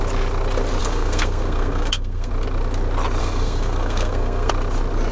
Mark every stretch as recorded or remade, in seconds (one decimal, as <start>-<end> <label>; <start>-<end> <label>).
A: 0.0-0.8 recorded; 0.8-2.3 remade; 2.3-3.2 recorded; 3.2-4.5 remade; 4.5-5.1 recorded

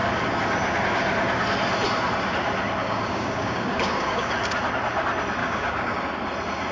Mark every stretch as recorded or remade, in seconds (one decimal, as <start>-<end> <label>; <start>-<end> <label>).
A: 0.0-2.8 recorded; 2.8-4.3 remade; 4.3-5.4 recorded; 5.4-6.0 remade; 6.0-6.7 recorded

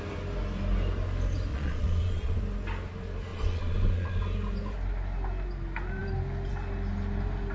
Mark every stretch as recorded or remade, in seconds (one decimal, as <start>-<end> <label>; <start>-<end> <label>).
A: 0.0-1.5 recorded; 1.5-2.4 remade; 2.4-3.3 recorded; 3.3-4.2 remade; 4.2-7.5 recorded

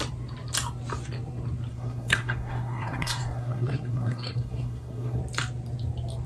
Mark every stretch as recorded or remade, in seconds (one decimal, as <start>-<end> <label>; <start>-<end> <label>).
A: 0.0-1.7 recorded; 1.7-5.2 remade; 5.2-6.3 recorded

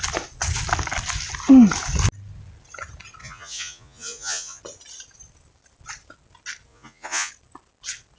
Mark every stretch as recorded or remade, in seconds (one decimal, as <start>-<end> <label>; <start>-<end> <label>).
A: 0.0-3.2 recorded; 3.2-4.6 remade; 4.6-6.7 recorded; 6.7-7.3 remade; 7.3-8.2 recorded

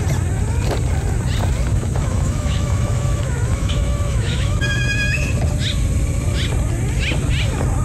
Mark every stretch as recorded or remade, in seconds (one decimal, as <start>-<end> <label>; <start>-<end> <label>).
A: 0.0-1.7 recorded; 1.7-5.2 remade; 5.2-7.8 recorded

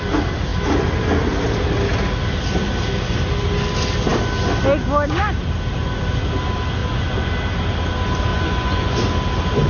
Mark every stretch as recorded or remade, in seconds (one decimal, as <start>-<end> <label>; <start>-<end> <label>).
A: 0.0-6.8 recorded; 6.8-7.3 remade; 7.3-8.3 recorded; 8.3-9.0 remade; 9.0-9.7 recorded

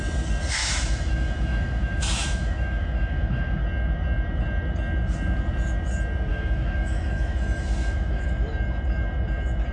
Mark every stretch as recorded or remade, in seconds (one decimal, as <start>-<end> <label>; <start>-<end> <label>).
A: 0.0-0.6 recorded; 0.6-3.6 remade; 3.6-6.3 recorded; 6.3-8.5 remade; 8.5-9.7 recorded